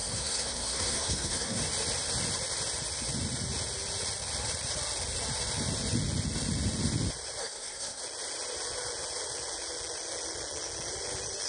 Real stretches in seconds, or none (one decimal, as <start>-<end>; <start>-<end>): 1.6-7.4; 8.0-11.5